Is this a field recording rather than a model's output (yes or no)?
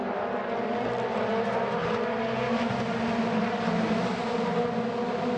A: yes